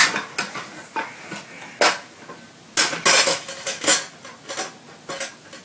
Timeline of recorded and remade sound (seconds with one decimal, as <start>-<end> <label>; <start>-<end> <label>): 0.0-3.3 recorded; 3.3-4.0 remade; 4.0-5.6 recorded